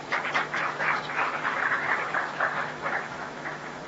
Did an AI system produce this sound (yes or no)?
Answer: yes